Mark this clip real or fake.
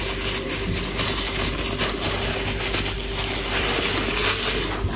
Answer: real